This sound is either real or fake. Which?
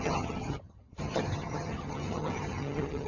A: fake